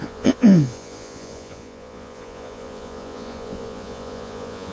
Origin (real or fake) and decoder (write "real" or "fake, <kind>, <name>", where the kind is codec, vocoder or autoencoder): fake, vocoder, Vocos